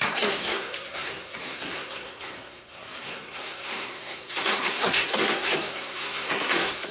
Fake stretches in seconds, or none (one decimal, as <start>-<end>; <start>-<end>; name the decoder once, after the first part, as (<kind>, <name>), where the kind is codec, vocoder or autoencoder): 0.0-6.9 (codec, SNAC)